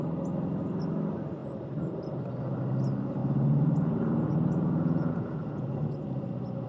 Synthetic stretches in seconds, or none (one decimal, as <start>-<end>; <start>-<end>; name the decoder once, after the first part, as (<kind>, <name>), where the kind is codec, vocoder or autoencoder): 3.2-5.9 (vocoder, Vocos)